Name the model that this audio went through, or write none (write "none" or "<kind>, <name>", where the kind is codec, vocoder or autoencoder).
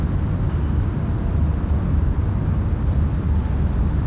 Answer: none